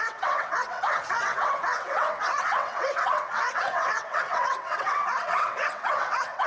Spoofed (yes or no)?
yes